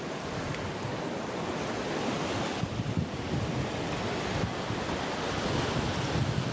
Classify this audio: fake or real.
real